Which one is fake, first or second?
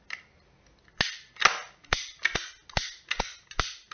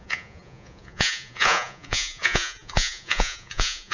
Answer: second